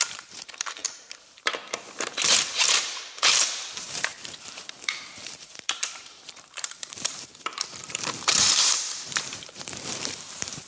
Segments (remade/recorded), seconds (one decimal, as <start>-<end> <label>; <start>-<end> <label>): 0.0-10.7 remade